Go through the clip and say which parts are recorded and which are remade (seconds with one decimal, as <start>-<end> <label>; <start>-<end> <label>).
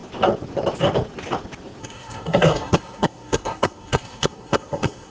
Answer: 0.0-1.8 recorded; 1.8-5.1 remade